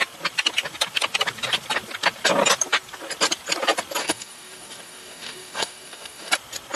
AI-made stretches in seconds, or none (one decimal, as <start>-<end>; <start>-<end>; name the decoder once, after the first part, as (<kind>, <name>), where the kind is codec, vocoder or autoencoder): 4.0-6.3 (codec, DAC)